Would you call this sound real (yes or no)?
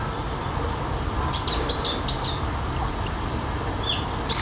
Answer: yes